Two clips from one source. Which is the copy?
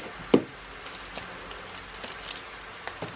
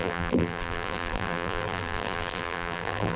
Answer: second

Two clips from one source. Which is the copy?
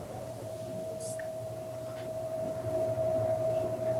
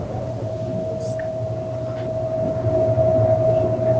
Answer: first